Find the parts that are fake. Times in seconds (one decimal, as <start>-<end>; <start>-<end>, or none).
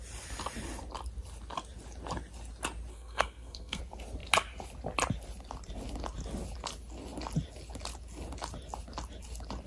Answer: 2.9-3.8